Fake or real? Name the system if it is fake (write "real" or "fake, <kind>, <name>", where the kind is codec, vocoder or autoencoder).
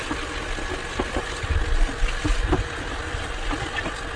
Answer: real